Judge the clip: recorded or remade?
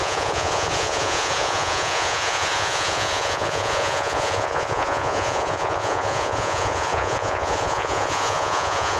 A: remade